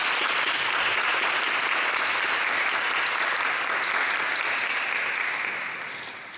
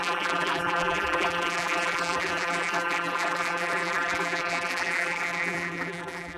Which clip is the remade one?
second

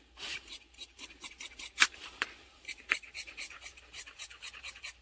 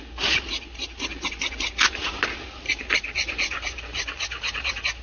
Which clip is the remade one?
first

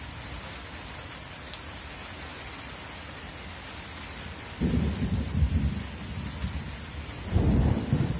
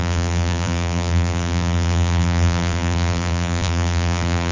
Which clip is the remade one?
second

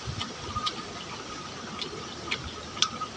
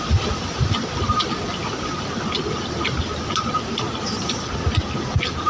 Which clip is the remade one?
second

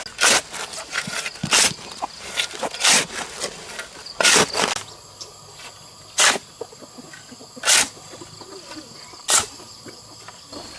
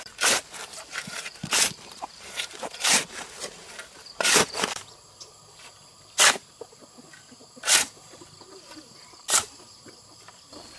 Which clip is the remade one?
second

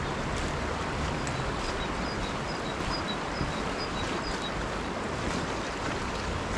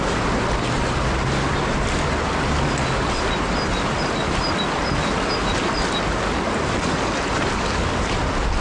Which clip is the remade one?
first